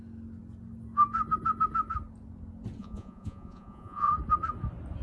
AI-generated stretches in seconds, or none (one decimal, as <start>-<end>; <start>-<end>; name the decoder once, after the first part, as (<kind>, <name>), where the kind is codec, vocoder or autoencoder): 2.8-4.1 (vocoder, Vocos)